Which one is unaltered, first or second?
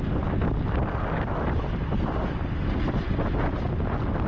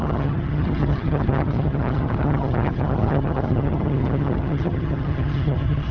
first